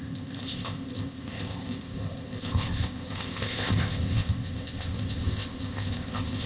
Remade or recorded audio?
remade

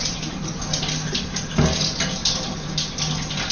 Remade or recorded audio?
recorded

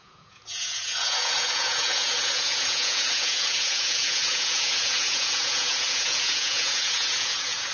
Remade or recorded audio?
remade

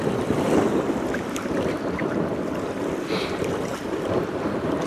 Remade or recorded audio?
recorded